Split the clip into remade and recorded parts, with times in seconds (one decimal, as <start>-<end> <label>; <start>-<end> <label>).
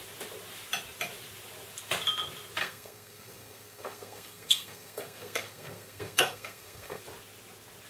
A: 0.0-2.6 recorded; 2.6-7.0 remade; 7.0-7.9 recorded